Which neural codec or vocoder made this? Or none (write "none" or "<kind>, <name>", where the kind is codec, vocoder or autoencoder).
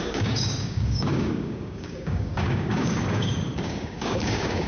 codec, DAC